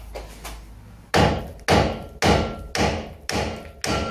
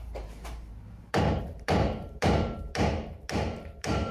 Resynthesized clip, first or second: second